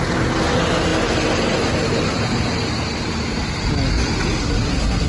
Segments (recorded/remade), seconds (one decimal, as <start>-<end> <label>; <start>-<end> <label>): 0.0-4.4 recorded; 4.4-5.1 remade

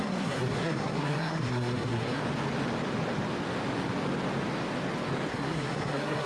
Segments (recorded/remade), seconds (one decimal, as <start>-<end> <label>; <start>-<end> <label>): 0.0-2.2 remade; 2.2-5.3 recorded; 5.3-6.3 remade

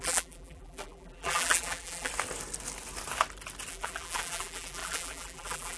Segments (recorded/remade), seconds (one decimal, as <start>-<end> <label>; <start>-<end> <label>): 0.0-2.1 remade; 2.1-3.7 recorded; 3.7-5.8 remade

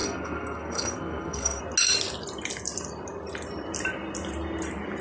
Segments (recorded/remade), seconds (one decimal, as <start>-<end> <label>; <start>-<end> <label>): 0.0-1.6 remade; 1.6-5.0 recorded

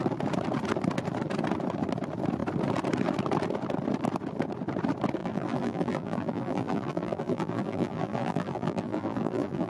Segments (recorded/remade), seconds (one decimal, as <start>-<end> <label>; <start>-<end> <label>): 0.0-5.2 recorded; 5.2-9.7 remade

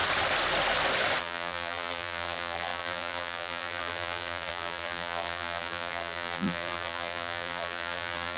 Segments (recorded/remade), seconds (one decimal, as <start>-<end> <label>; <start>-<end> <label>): 0.0-1.2 recorded; 1.2-8.4 remade

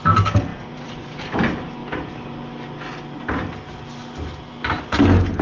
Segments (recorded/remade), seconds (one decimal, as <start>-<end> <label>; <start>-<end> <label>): 0.0-0.5 recorded; 0.5-1.2 remade; 1.2-5.4 recorded